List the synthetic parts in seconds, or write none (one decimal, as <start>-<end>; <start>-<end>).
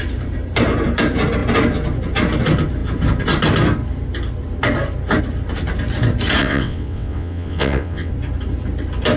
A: 6.4-8.1